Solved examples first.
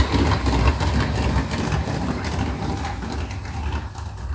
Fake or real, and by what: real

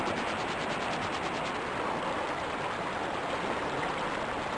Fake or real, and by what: real